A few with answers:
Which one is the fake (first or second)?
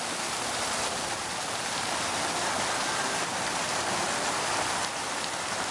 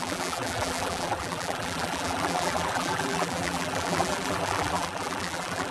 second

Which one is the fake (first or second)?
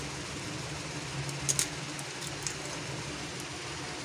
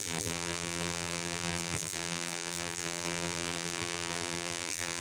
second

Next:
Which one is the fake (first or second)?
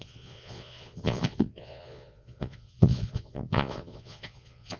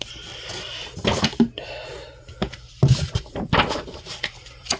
first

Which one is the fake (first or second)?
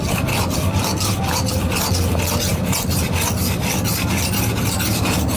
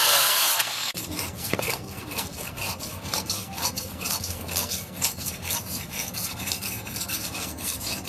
second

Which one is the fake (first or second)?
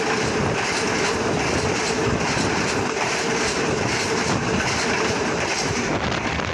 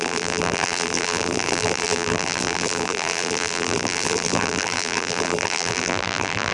second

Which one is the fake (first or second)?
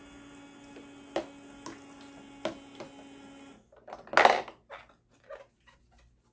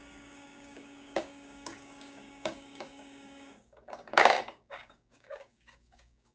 second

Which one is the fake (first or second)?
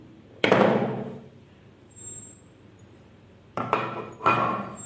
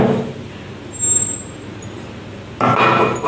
first